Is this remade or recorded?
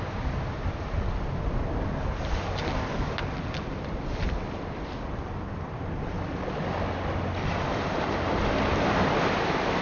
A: recorded